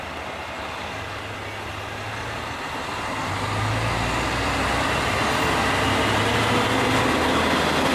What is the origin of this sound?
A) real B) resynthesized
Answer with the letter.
A